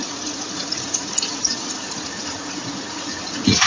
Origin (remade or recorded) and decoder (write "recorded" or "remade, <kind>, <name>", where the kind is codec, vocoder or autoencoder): remade, vocoder, Vocos